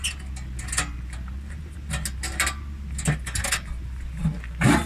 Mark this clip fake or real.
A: real